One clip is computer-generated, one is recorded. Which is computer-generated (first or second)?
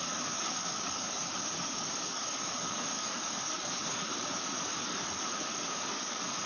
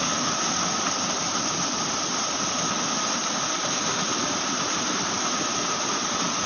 first